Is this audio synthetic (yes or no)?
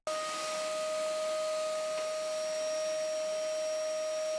no